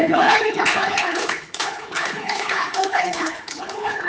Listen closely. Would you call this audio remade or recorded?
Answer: remade